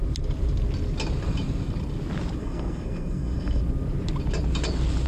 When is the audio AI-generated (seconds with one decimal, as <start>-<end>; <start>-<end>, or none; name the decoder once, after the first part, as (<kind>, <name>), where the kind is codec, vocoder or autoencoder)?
2.4-3.6 (codec, SNAC)